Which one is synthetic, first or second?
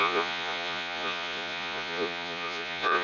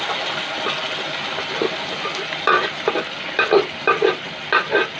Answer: first